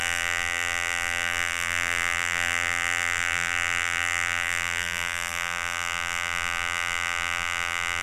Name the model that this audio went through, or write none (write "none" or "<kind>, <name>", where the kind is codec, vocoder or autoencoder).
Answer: vocoder, BigVGAN v2